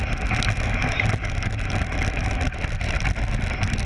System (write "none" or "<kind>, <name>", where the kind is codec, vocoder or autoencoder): none